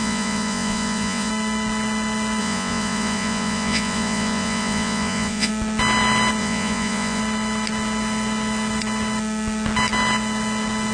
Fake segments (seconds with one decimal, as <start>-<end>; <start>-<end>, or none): 0.0-1.3; 2.4-5.5; 6.4-7.2

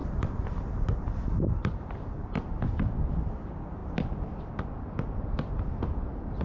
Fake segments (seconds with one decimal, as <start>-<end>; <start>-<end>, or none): 0.0-2.1

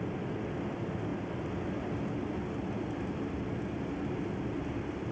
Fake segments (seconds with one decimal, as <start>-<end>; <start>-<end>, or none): none

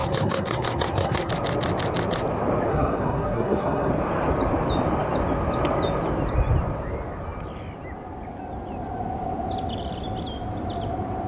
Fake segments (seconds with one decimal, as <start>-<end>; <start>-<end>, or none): 0.0-1.3; 2.7-3.9

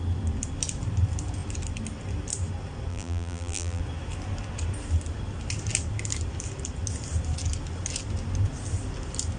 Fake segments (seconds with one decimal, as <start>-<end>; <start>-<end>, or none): 2.9-3.8

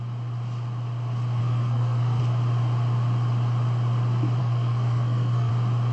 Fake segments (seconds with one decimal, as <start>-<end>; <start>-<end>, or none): 1.4-2.2; 4.4-5.5